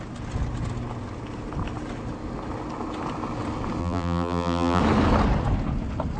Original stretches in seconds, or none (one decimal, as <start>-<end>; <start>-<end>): 0.0-3.8; 4.8-6.2